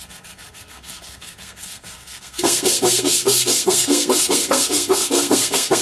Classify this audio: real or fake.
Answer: fake